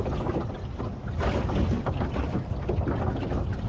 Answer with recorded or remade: recorded